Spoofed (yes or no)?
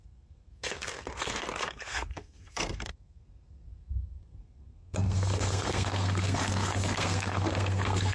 yes